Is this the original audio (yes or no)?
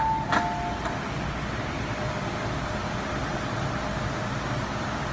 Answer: yes